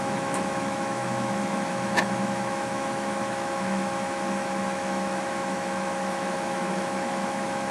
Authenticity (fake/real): fake